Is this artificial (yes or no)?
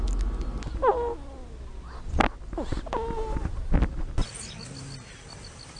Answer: no